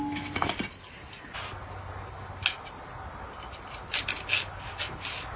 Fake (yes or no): no